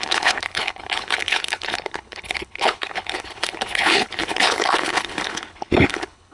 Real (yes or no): no